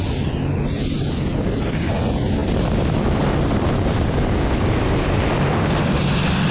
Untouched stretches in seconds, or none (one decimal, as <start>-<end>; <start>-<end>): 0.0-6.5

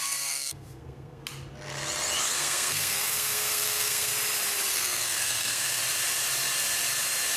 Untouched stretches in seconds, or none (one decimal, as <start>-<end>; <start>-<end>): 1.2-2.2; 4.1-4.7; 5.8-7.4

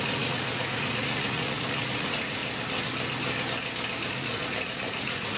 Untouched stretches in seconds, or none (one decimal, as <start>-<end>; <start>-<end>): 2.4-4.1

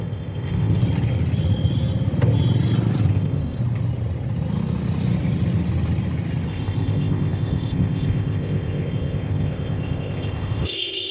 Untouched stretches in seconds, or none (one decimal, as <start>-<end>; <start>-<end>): 0.8-3.1; 3.6-6.5